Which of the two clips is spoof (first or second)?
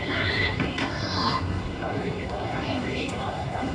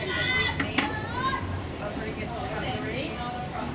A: first